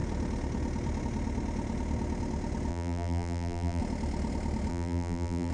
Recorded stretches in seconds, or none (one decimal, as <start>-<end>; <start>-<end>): 0.0-2.7; 3.8-4.7